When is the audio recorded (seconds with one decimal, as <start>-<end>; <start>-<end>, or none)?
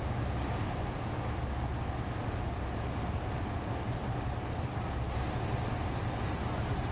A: 0.0-6.9